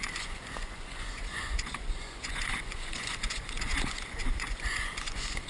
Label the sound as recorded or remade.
remade